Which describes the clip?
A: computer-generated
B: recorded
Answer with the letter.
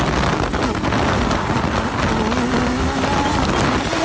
B